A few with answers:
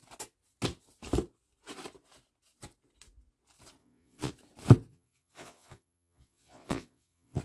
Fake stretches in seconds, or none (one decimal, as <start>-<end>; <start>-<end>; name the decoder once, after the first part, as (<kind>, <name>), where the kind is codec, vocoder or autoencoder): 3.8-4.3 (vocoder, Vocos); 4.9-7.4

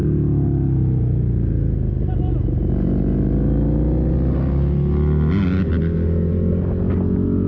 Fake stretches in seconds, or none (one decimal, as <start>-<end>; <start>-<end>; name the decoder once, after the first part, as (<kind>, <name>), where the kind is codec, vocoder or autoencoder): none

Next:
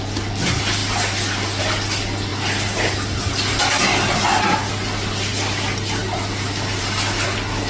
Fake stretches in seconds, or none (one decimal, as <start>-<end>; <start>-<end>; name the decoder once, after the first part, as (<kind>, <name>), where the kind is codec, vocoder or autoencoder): none